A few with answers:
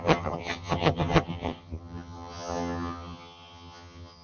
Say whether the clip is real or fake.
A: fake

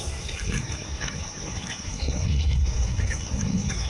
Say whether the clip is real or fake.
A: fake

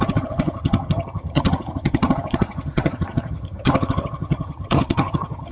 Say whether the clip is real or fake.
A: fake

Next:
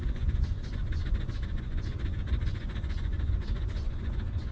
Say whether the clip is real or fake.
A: fake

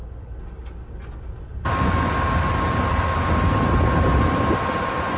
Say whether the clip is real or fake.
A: real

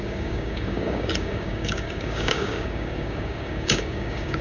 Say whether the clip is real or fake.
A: fake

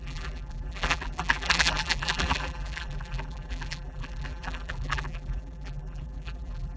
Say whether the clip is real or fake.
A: fake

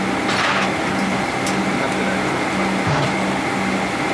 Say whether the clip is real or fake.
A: real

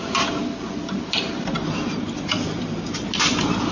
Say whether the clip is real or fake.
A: real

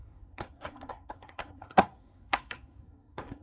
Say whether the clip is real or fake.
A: fake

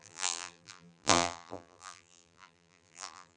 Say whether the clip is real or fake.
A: fake